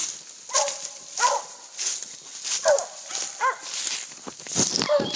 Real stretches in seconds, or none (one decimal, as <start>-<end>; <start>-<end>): 0.0-5.2